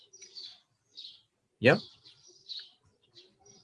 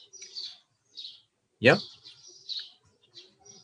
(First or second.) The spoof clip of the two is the first